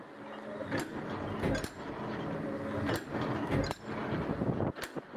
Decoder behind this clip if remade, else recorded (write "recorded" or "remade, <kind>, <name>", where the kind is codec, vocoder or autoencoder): recorded